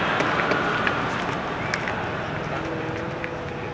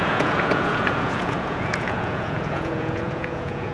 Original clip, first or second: first